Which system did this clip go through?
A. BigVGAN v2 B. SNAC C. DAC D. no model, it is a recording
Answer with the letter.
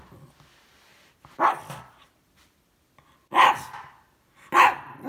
D